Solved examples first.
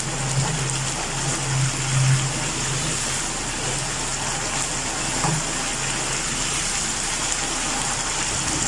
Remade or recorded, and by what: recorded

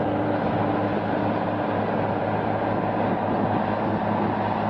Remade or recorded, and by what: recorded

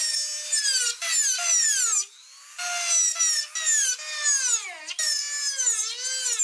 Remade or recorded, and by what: recorded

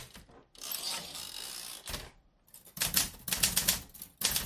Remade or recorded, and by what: recorded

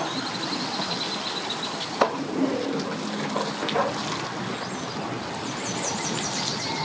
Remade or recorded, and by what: recorded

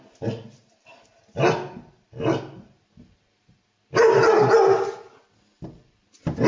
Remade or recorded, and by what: recorded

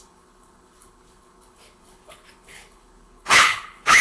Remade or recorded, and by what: remade, codec, HILCodec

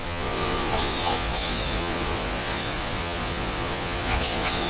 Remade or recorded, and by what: remade, vocoder, Vocos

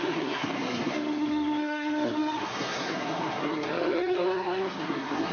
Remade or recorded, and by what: remade, codec, SNAC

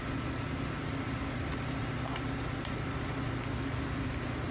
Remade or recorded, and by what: recorded